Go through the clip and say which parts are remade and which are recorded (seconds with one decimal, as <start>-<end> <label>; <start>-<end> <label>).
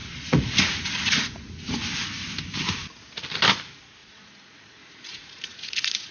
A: 0.0-1.7 remade; 1.7-4.0 recorded; 4.0-6.1 remade